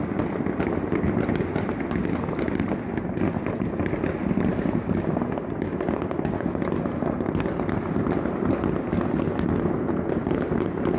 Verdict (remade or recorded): recorded